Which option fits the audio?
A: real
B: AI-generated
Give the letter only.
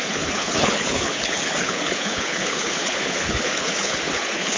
B